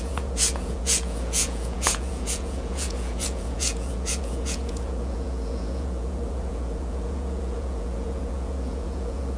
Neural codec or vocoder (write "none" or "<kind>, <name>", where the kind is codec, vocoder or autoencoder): vocoder, Vocos